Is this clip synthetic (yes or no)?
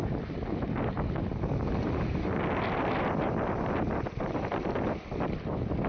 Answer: no